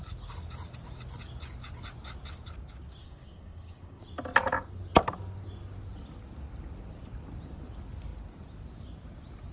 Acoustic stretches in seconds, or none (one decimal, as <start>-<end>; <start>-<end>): 0.0-3.0; 4.0-9.5

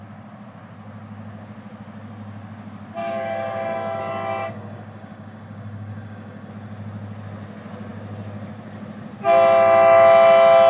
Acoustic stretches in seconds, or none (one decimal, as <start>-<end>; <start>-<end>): 0.0-3.0; 4.0-4.4; 6.5-10.7

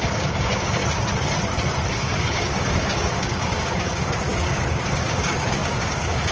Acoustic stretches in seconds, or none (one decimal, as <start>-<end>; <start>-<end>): 0.8-1.9

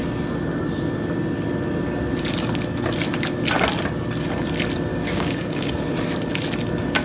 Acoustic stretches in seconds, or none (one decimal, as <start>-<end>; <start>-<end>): 0.0-4.9; 5.7-7.0

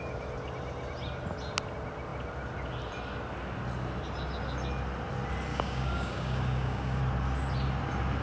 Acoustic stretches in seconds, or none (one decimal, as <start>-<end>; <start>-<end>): 0.0-5.5; 7.0-8.2